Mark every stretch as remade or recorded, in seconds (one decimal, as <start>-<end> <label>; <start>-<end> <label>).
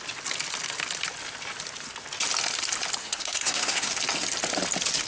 0.0-3.0 recorded; 3.0-3.9 remade; 3.9-5.1 recorded